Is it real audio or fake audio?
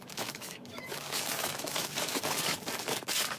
fake